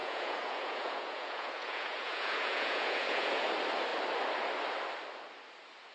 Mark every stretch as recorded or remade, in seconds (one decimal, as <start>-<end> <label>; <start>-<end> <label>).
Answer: 0.0-3.5 remade; 3.5-5.9 recorded